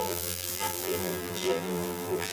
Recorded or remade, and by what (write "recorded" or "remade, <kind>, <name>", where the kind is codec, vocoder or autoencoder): remade, vocoder, BigVGAN v2